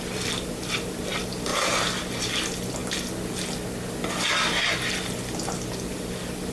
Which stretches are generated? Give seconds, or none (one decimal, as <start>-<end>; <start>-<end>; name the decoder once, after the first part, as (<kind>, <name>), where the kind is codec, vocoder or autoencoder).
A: 0.0-2.8 (vocoder, BigVGAN v2); 4.1-6.5